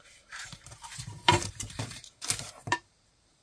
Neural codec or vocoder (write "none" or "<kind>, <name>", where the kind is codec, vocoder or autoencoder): vocoder, BigVGAN v2